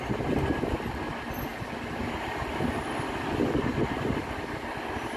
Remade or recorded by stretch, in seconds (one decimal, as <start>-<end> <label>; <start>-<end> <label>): 0.0-5.2 recorded